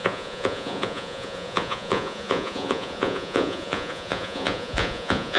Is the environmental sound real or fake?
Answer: fake